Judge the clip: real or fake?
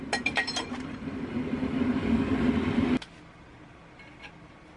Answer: real